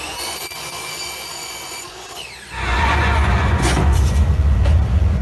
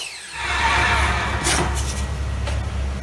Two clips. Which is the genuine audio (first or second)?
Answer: second